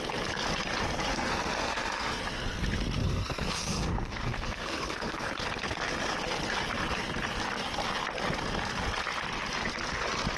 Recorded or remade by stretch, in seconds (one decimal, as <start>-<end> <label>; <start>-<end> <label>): 0.0-1.1 recorded; 1.1-2.2 remade; 2.2-3.0 recorded; 3.0-5.3 remade; 5.3-10.4 recorded